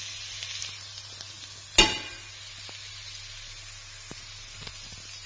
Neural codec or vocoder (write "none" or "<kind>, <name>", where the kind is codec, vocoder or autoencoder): none